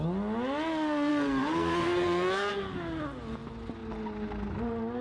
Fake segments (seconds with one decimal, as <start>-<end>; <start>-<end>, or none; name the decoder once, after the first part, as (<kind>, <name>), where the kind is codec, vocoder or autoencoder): 1.1-2.5 (codec, SNAC)